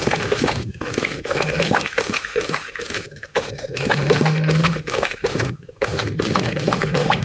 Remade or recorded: remade